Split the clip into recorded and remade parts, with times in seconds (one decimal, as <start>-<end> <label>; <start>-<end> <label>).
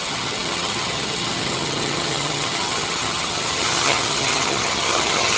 0.0-5.4 remade